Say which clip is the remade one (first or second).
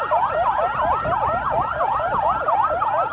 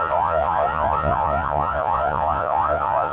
second